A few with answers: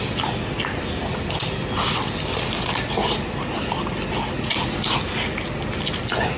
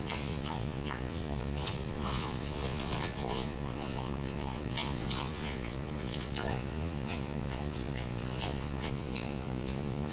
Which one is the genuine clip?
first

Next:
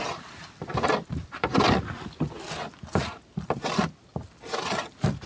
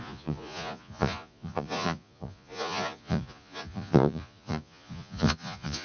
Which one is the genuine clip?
first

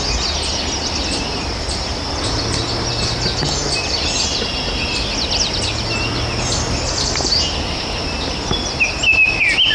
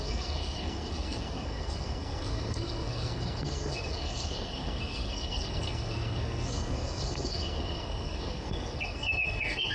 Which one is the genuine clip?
first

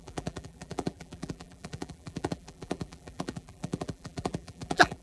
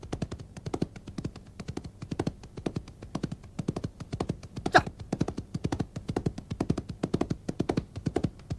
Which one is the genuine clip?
second